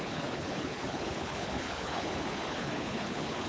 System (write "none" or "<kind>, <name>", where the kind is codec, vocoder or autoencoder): codec, HILCodec